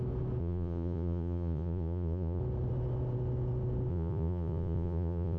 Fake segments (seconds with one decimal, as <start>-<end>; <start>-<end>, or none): 0.4-2.4; 3.9-5.4